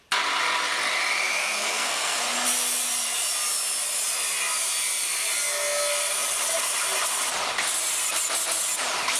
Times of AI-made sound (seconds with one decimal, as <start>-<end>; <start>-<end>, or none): 1.4-2.2